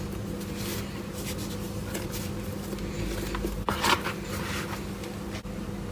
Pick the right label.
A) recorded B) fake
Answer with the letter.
A